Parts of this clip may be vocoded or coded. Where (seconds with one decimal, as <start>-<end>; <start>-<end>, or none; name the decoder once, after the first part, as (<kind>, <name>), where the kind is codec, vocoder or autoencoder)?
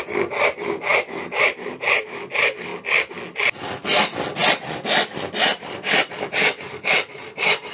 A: 0.0-2.7 (vocoder, BigVGAN v2); 6.2-7.7